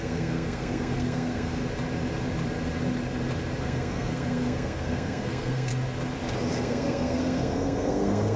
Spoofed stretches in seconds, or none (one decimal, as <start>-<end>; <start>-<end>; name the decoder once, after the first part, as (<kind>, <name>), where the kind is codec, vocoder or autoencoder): 0.0-1.6 (codec, SNAC); 3.6-5.7; 6.5-8.4